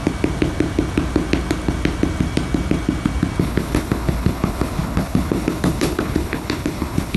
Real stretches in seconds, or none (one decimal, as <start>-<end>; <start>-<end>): 0.0-3.4